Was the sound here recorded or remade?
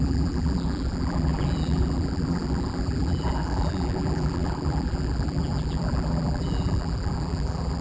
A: remade